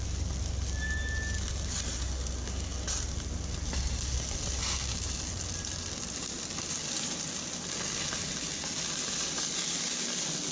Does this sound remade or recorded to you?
recorded